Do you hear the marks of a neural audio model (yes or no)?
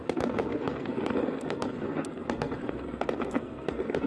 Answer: yes